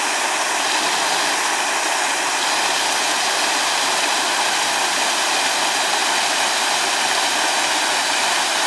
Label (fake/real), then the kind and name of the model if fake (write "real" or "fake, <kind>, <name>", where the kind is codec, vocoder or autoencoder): real